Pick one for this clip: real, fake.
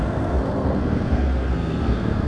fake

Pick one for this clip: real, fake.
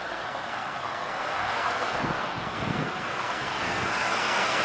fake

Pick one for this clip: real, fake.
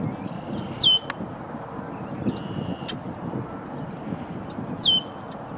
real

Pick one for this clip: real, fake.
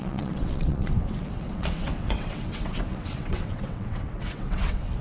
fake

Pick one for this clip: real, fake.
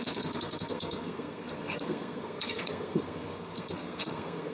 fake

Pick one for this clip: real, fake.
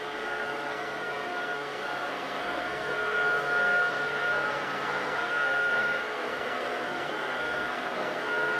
fake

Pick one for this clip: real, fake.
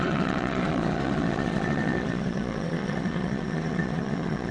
fake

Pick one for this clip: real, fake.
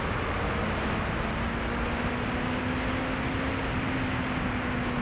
real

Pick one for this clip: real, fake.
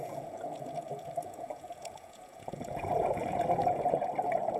fake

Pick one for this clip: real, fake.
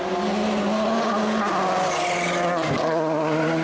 real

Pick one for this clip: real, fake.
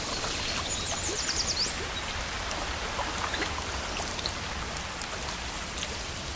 real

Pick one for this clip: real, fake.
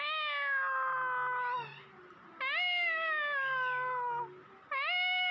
real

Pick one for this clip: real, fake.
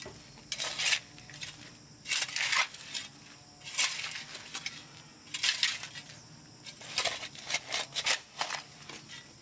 real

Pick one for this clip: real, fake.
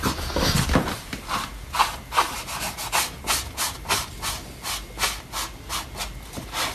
real